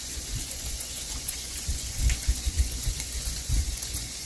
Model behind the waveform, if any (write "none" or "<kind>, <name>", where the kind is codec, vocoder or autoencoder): vocoder, Vocos